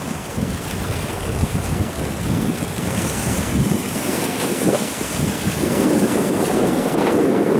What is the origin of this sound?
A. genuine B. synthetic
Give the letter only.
B